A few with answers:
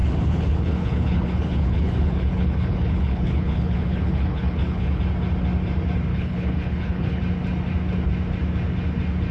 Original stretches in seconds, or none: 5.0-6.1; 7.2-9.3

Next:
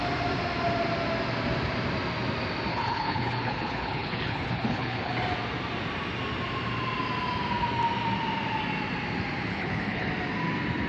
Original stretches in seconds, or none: 0.0-2.7; 5.1-9.5; 10.1-10.9

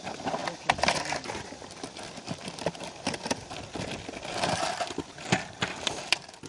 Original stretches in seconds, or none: 0.0-6.5

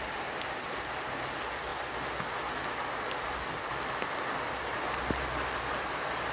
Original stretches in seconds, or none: 0.0-6.3

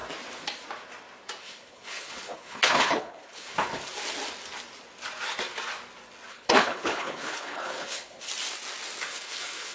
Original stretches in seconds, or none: 0.0-1.4; 3.7-6.3; 8.3-9.0

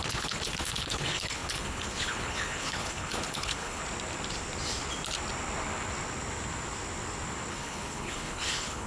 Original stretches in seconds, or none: 3.8-7.5

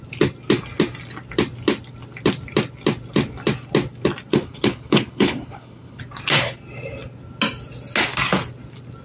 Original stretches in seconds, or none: 0.0-4.3; 6.0-9.0

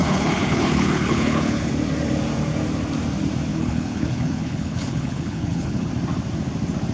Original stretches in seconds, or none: 1.7-3.5; 5.9-6.9